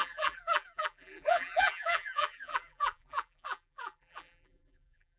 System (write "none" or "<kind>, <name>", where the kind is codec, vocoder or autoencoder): vocoder, BigVGAN v2